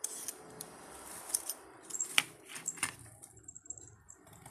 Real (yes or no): no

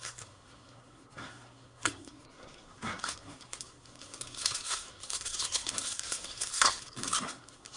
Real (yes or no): no